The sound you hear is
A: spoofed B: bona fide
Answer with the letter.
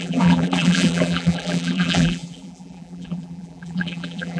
A